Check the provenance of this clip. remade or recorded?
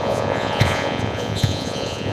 remade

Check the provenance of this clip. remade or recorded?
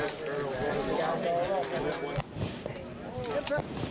recorded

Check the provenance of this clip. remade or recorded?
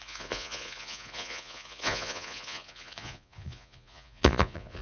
remade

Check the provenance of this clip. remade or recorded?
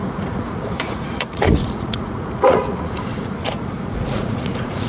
remade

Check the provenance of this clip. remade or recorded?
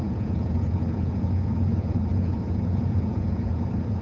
remade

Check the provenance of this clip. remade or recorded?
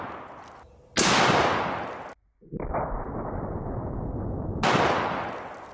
recorded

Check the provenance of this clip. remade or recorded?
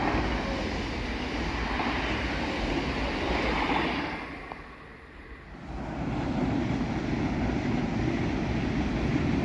recorded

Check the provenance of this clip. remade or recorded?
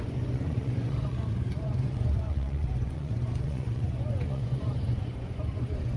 remade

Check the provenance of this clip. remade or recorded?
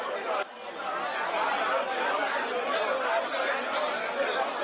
recorded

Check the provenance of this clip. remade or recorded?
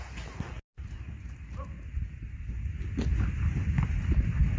recorded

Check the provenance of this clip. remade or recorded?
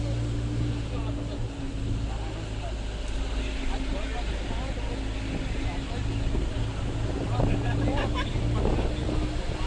recorded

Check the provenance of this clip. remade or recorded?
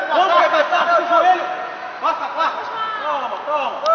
recorded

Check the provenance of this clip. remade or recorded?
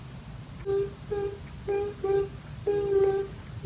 recorded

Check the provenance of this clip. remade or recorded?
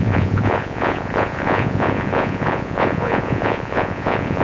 remade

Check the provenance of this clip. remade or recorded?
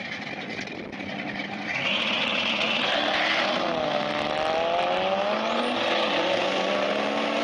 recorded